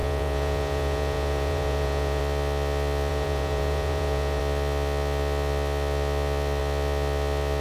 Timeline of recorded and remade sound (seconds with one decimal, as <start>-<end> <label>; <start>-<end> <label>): 0.0-2.2 remade; 2.2-3.1 recorded; 3.1-4.4 remade; 4.4-7.6 recorded